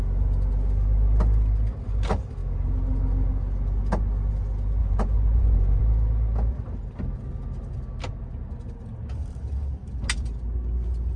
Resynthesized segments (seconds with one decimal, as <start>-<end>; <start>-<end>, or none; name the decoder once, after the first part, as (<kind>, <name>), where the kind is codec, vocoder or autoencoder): 4.8-5.8 (vocoder, Vocos)